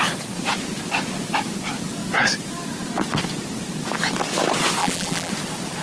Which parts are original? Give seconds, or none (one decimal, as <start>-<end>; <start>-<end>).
0.0-4.8; 5.3-5.8